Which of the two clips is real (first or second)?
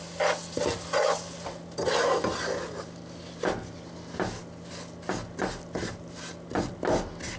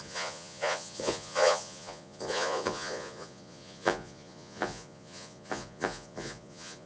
first